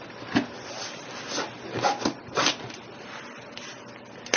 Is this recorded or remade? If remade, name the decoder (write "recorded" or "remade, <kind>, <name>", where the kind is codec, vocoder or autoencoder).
recorded